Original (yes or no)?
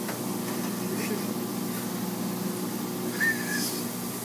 yes